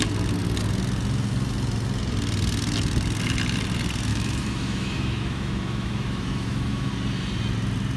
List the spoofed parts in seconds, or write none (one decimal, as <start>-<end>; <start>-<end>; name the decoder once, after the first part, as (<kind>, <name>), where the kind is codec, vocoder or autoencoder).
4.1-6.9 (autoencoder, DAC-VAE)